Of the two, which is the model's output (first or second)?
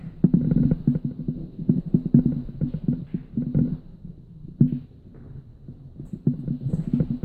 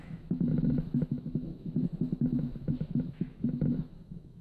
second